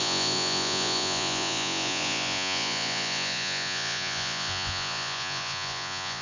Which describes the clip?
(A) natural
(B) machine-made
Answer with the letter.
B